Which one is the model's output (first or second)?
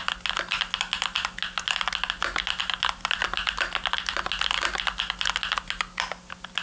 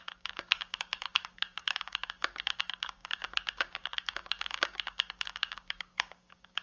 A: second